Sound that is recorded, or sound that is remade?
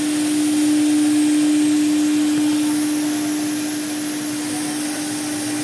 recorded